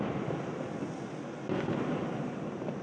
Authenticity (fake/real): real